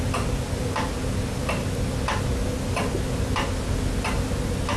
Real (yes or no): yes